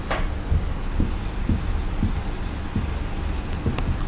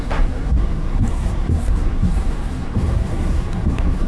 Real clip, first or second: first